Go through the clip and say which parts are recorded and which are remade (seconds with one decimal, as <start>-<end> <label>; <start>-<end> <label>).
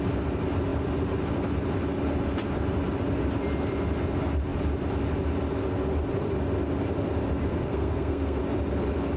0.0-7.5 recorded; 7.5-8.4 remade; 8.4-9.2 recorded